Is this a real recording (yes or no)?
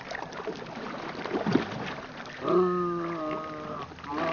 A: yes